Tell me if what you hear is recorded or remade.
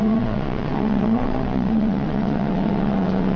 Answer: remade